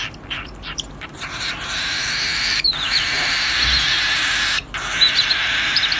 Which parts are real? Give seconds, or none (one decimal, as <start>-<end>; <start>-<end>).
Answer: 0.0-0.4; 3.3-6.0